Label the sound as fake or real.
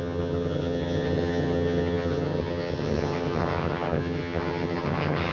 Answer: fake